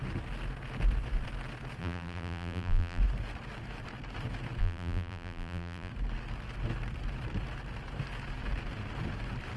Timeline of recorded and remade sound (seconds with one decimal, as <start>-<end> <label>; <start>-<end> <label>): 0.0-1.8 recorded; 1.8-3.0 remade; 3.0-4.6 recorded; 4.6-5.9 remade; 5.9-9.6 recorded